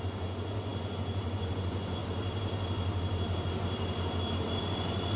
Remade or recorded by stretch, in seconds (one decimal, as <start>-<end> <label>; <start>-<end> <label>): 0.0-2.0 remade; 2.0-4.6 recorded; 4.6-5.2 remade